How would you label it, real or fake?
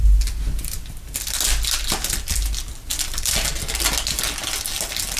real